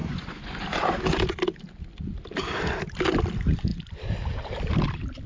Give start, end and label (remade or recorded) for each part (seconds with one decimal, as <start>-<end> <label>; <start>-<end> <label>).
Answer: 0.0-0.6 remade; 0.6-5.3 recorded